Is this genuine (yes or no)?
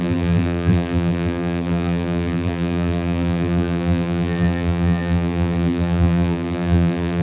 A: no